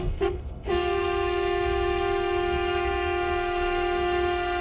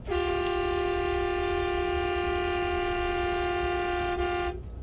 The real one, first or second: second